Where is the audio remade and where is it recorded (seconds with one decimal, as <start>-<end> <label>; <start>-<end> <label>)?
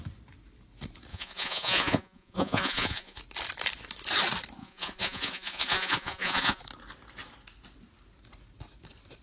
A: 0.0-1.1 recorded; 1.1-3.2 remade; 3.2-4.6 recorded; 4.6-6.6 remade; 6.6-9.2 recorded